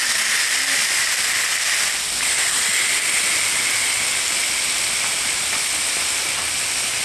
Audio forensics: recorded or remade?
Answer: recorded